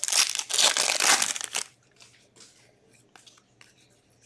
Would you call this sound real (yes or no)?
yes